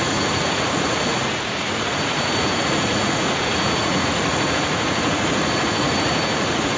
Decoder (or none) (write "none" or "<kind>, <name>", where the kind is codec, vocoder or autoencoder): vocoder, Vocos